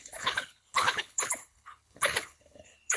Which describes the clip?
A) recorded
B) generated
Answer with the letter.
B